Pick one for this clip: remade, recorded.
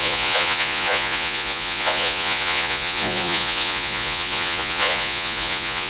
remade